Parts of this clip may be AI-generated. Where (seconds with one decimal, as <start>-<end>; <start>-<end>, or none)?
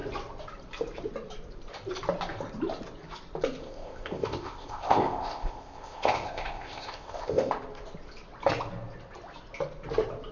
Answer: 3.6-7.5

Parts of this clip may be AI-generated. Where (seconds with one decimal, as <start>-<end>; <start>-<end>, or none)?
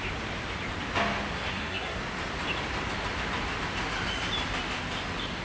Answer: 1.3-2.0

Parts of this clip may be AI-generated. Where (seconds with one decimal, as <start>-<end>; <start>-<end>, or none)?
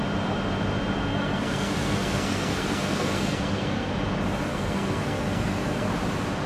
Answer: 1.1-3.9; 4.5-5.9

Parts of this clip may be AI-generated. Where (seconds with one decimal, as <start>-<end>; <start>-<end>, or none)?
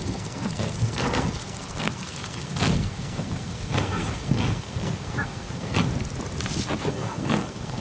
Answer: 0.0-5.9; 6.8-7.8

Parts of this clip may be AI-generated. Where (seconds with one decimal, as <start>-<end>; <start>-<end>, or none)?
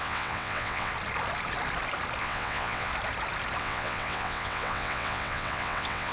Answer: 0.0-0.9; 2.2-2.9; 3.6-6.1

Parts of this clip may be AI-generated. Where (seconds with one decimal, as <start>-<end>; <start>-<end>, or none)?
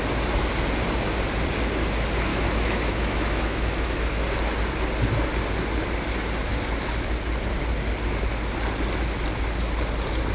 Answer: 2.3-4.1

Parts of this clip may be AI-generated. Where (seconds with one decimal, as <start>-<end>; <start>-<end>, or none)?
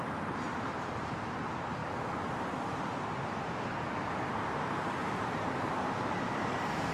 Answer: 0.0-1.8; 3.8-6.9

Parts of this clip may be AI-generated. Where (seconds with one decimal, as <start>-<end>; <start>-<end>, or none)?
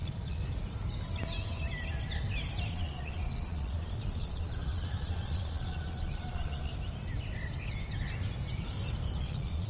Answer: 0.0-0.4; 2.7-6.7; 9.2-9.7